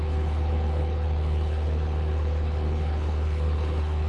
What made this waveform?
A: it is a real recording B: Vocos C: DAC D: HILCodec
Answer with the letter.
D